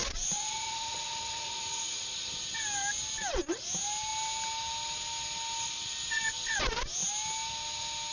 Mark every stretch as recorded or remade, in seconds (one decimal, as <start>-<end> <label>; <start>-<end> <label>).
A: 0.0-2.3 remade; 2.3-8.1 recorded